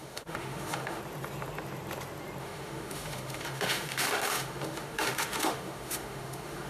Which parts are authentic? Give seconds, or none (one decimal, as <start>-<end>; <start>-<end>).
1.0-2.4

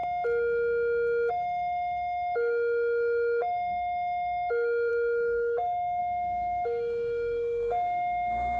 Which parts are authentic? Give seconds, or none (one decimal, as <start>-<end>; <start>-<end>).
0.0-1.3

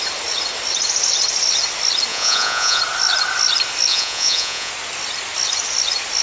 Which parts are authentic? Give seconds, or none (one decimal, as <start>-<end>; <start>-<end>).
0.0-2.1; 2.8-3.9; 4.7-6.2

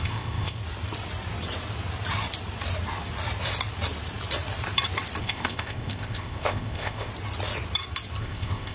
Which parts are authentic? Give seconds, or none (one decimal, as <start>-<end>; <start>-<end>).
0.6-5.2; 7.1-8.2